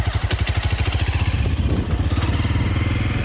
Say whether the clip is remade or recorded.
recorded